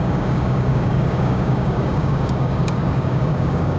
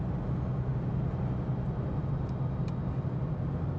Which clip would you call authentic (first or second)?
second